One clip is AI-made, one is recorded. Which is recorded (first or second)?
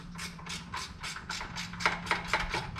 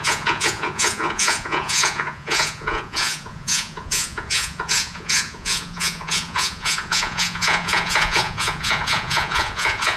first